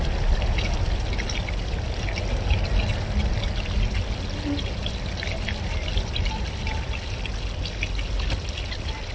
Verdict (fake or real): real